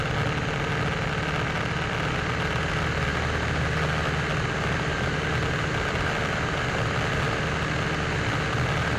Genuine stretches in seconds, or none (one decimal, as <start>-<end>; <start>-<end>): 0.0-9.0